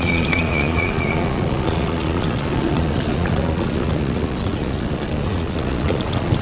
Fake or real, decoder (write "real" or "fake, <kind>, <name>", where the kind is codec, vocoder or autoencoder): fake, vocoder, Vocos